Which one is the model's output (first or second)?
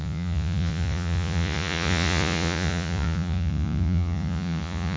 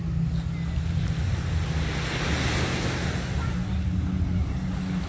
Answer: first